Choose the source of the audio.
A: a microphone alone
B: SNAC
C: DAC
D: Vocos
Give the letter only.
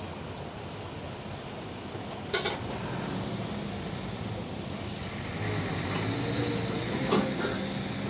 A